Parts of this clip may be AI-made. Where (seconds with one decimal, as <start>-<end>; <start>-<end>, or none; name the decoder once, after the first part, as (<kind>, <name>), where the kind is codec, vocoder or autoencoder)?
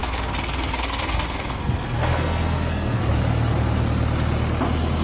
0.0-3.0 (codec, SNAC)